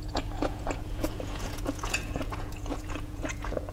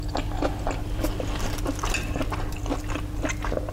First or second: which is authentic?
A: second